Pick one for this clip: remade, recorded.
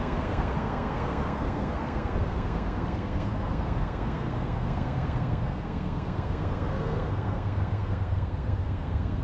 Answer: remade